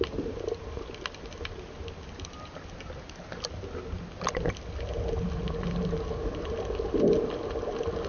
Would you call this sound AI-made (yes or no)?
no